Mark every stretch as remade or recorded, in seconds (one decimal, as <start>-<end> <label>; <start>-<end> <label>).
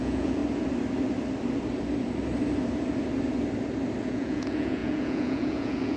0.0-0.4 remade; 0.4-4.0 recorded; 4.0-6.0 remade